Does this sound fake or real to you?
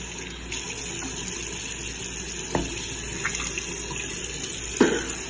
real